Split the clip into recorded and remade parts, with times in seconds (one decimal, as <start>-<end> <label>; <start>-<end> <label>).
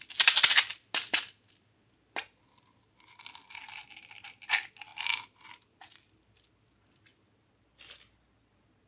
0.0-8.9 recorded